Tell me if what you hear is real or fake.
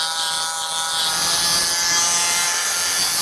real